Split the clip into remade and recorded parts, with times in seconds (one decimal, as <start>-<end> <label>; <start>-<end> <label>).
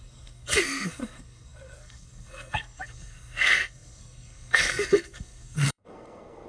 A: 0.0-6.5 remade